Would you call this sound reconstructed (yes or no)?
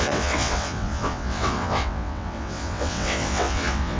yes